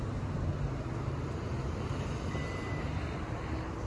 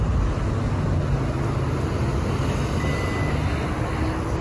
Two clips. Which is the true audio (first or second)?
second